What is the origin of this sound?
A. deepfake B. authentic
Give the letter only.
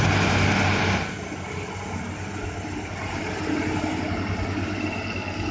B